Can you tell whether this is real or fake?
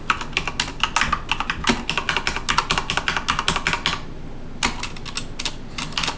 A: real